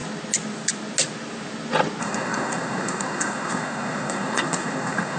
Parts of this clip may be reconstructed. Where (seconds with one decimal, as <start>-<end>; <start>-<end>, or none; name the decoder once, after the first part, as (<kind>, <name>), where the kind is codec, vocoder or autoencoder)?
2.0-5.2 (codec, SNAC)